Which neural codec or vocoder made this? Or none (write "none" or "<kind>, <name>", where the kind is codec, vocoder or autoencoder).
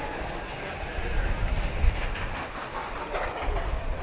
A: none